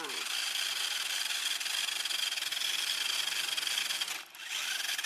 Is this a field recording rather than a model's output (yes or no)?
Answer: yes